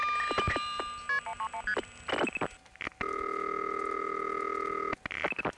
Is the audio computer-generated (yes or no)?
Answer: no